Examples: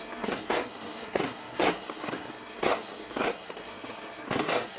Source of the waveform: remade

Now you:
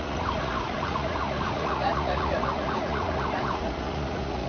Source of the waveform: remade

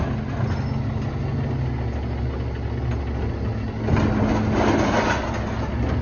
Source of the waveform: recorded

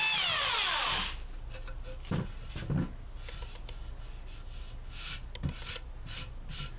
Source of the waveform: recorded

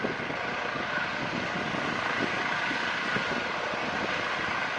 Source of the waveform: recorded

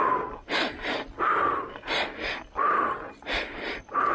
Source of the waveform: recorded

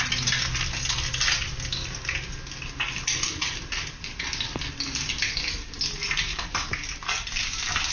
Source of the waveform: recorded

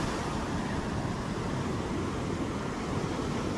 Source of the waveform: recorded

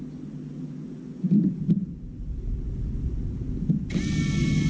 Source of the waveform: recorded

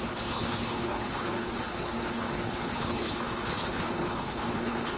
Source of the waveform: remade